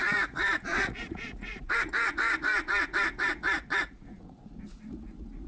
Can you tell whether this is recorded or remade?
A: remade